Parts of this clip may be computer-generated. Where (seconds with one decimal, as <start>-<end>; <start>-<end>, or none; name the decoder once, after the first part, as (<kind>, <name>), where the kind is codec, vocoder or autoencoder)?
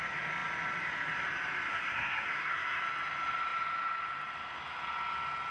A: 1.7-2.8 (codec, SNAC)